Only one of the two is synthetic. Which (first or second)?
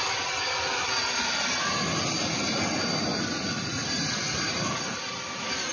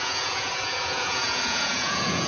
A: second